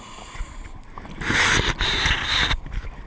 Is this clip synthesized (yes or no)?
no